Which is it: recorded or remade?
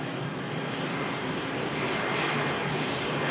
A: recorded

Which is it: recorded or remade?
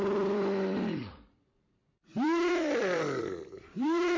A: remade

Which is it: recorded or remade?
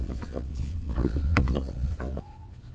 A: remade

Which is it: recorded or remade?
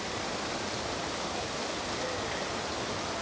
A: recorded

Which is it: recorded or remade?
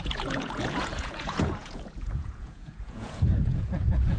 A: remade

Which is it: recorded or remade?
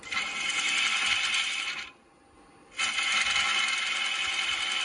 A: recorded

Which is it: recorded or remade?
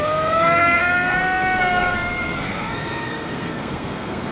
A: remade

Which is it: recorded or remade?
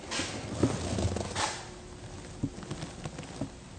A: recorded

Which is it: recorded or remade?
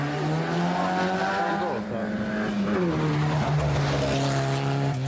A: recorded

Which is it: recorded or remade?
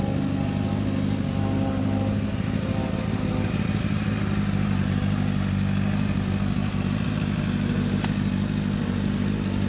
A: recorded